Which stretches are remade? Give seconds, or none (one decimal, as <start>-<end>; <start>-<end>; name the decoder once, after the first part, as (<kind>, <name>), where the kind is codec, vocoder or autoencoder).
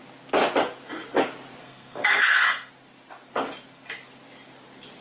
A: 1.6-2.7 (codec, SNAC)